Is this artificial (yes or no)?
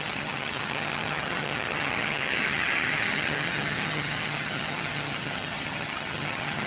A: yes